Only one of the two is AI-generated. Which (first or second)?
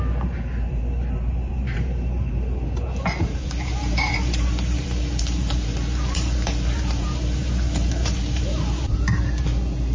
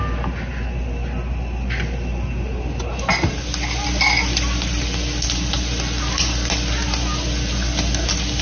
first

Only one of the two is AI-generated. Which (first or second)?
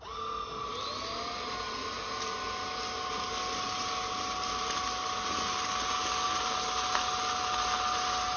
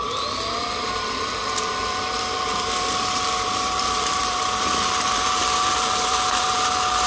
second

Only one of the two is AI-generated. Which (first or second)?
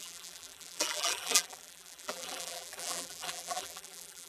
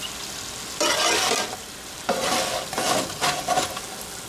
first